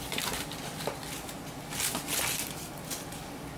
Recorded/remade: recorded